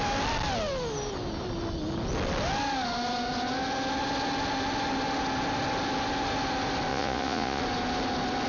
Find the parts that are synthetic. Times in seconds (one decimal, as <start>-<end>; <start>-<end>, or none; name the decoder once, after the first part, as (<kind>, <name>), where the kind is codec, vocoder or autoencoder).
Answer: 6.9-7.6 (vocoder, Vocos)